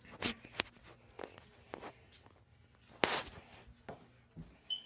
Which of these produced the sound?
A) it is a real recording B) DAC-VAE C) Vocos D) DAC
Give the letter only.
A